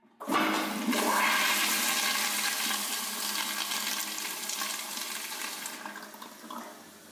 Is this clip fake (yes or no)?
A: no